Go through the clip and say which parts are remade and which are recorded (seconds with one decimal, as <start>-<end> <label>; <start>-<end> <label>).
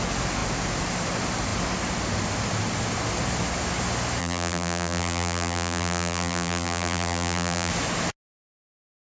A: 0.0-4.2 recorded; 4.2-7.7 remade; 7.7-9.1 recorded